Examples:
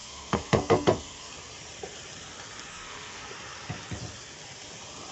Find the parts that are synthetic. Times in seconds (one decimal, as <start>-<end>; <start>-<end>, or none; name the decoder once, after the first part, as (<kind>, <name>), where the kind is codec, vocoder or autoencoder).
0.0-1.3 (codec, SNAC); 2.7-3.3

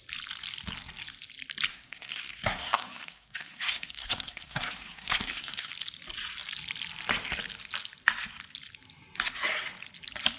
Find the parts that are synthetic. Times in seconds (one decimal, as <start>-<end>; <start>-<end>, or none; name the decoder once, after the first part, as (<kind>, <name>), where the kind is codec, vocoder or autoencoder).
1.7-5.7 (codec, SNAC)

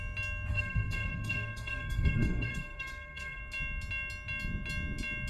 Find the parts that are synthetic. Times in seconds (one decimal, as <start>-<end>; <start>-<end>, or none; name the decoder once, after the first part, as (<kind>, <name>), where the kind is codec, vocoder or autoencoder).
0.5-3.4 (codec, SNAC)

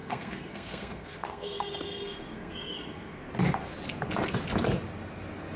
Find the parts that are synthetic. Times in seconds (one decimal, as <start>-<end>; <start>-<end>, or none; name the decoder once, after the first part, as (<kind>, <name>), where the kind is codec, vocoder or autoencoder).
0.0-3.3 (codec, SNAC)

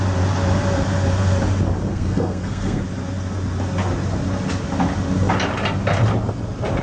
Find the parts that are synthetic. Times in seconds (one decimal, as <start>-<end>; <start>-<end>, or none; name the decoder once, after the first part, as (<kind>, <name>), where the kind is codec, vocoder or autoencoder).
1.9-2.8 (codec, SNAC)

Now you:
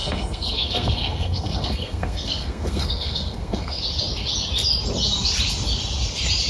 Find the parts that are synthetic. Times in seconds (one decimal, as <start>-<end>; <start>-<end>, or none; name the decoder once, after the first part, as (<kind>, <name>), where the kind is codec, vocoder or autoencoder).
0.0-3.8 (codec, SNAC)